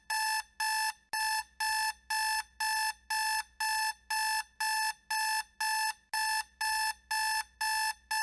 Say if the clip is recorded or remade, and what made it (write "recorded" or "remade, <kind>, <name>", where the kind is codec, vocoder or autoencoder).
recorded